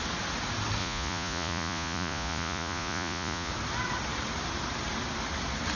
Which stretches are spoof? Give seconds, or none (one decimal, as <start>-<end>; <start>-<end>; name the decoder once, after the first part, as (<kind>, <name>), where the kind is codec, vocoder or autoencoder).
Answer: 0.8-3.5 (vocoder, Vocos)